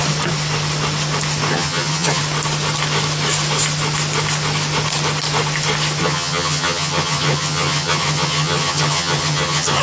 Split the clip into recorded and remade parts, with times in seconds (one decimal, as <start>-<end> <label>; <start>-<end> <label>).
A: 0.0-1.5 recorded; 1.5-2.2 remade; 2.2-6.0 recorded; 6.0-9.8 remade